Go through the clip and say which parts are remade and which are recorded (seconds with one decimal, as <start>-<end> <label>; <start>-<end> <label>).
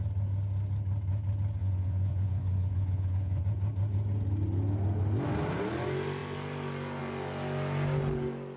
0.0-1.6 recorded; 1.6-3.4 remade; 3.4-8.6 recorded